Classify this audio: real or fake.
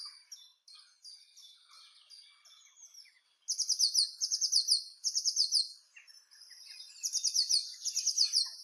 real